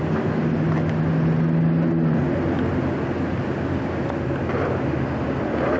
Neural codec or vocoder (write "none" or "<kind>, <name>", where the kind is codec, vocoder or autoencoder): none